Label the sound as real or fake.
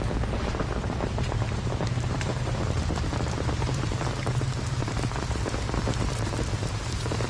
fake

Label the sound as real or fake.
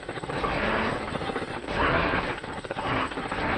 fake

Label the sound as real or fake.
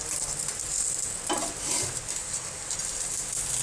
real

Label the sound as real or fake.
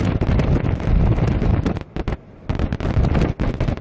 real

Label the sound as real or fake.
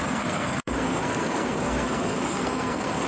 fake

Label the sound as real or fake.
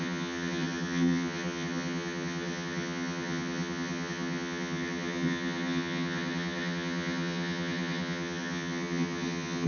fake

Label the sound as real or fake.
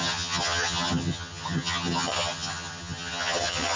fake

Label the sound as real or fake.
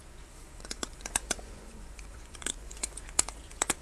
fake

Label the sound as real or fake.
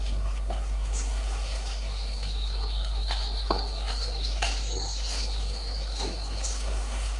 fake